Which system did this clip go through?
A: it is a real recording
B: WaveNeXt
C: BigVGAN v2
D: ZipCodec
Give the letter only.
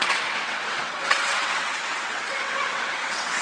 B